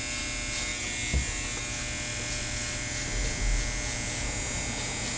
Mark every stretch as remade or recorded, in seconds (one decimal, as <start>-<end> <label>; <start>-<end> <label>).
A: 0.0-2.1 recorded; 2.1-3.2 remade; 3.2-5.2 recorded